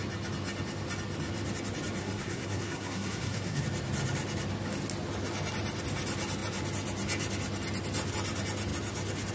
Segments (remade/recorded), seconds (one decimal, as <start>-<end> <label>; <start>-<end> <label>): 0.0-2.0 recorded; 2.0-3.6 remade; 3.6-9.3 recorded

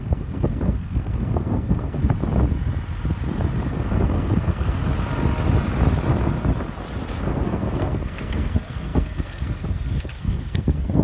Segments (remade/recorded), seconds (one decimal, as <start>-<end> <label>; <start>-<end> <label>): 0.0-2.0 remade; 2.0-3.7 recorded; 3.7-4.8 remade; 4.8-7.2 recorded; 7.2-11.0 remade